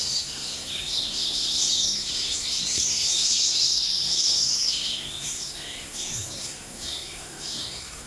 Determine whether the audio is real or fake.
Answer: fake